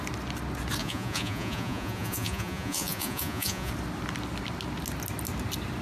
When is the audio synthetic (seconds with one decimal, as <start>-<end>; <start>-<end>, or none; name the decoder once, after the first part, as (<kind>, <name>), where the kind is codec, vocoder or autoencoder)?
0.8-3.7 (vocoder, Vocos)